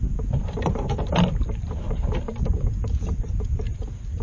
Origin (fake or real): fake